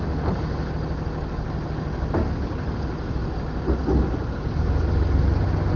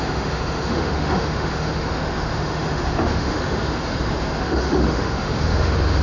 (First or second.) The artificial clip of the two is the second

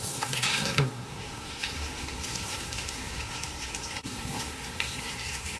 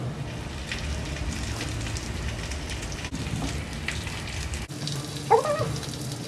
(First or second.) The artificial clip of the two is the first